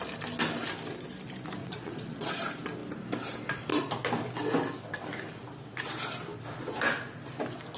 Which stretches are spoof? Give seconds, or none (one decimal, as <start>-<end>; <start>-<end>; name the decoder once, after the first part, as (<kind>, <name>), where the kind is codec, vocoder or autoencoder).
1.6-2.3 (vocoder, Vocos)